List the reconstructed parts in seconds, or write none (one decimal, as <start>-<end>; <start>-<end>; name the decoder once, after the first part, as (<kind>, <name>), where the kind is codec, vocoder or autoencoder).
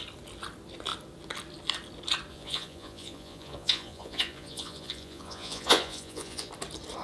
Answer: 2.3-6.5 (vocoder, Vocos)